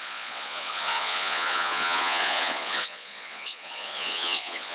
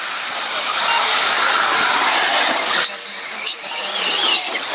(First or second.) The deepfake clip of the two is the first